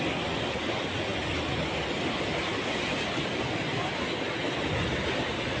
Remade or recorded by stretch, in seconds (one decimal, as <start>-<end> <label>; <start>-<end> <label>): 0.0-5.6 recorded